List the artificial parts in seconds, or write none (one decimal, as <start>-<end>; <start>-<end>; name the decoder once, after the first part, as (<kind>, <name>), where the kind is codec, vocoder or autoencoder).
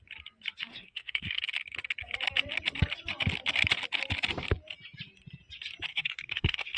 0.7-1.4 (codec, SNAC); 5.9-6.8